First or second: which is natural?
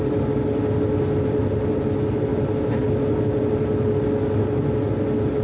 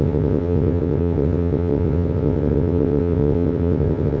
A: first